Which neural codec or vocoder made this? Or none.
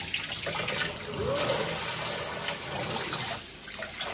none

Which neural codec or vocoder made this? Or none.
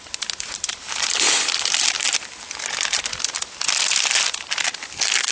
none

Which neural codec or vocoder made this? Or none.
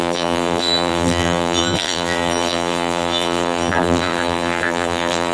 vocoder, BigVGAN v2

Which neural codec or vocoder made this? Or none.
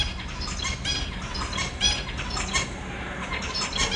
none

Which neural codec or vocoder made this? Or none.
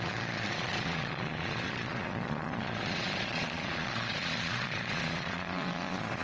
vocoder, Vocos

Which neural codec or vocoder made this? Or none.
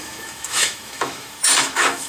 autoencoder, DAC-VAE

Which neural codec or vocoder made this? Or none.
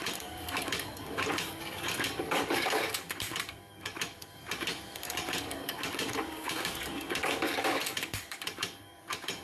codec, DAC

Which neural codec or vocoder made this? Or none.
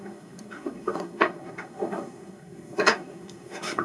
codec, SNAC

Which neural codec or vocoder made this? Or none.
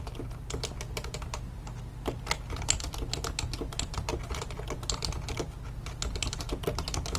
none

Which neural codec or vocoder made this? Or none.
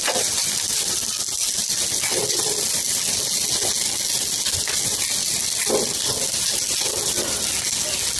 none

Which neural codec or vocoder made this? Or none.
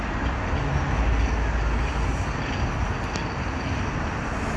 none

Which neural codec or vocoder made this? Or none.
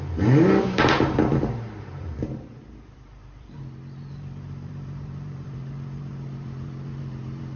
vocoder, BigVGAN v2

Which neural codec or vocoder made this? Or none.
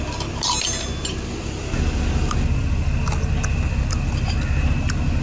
none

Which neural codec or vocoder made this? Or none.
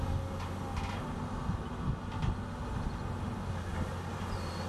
none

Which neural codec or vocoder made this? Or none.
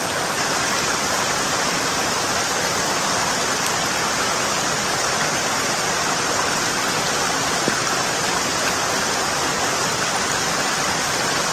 none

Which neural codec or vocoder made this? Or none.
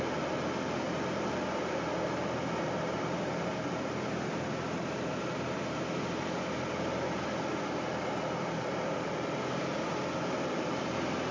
none